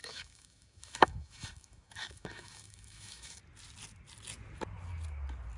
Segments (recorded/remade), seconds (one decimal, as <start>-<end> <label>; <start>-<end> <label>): 0.0-3.4 remade; 3.4-5.6 recorded